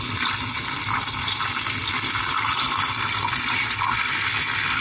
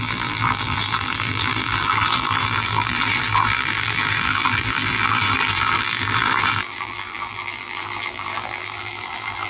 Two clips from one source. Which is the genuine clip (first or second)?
first